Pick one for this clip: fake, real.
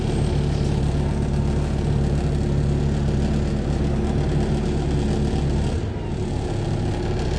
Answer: real